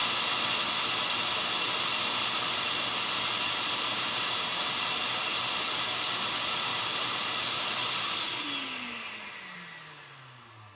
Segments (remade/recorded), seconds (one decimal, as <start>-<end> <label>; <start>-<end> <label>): 0.0-6.7 recorded; 6.7-7.7 remade; 7.7-10.8 recorded